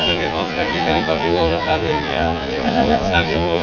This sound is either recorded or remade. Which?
remade